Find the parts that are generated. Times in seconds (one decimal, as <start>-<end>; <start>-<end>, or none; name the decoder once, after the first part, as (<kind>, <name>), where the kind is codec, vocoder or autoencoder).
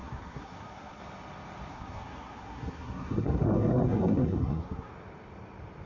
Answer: 0.0-1.0 (codec, SNAC); 1.7-4.9